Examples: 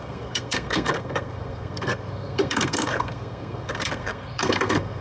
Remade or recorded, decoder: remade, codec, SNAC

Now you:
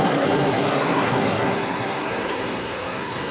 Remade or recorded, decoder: remade, codec, SNAC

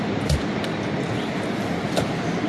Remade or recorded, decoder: recorded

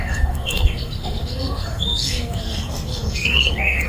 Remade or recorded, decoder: remade, codec, SNAC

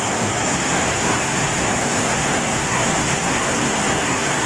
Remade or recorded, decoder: remade, codec, SNAC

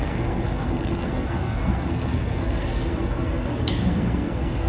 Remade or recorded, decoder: remade, codec, SNAC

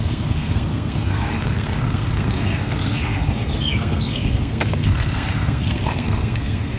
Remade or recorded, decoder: remade, codec, SNAC